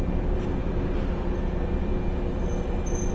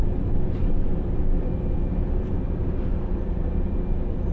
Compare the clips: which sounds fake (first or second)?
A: second